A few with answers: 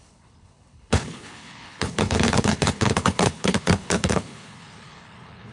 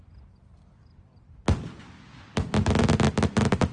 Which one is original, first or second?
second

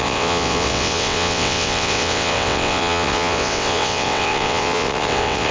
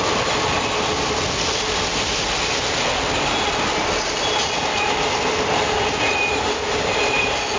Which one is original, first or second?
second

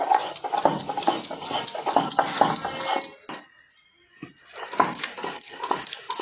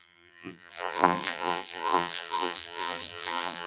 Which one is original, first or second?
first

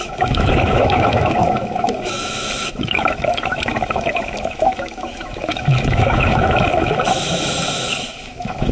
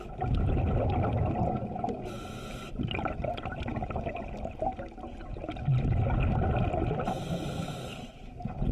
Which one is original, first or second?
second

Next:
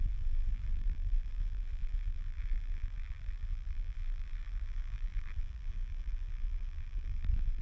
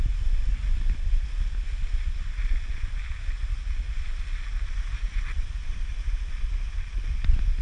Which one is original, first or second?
second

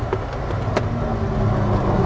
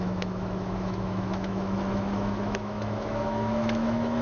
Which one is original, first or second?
first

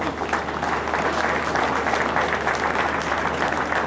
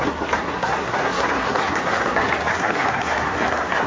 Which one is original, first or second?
first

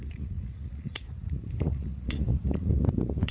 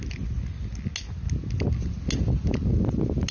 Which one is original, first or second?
second